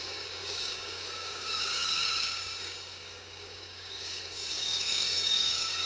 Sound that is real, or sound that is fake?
fake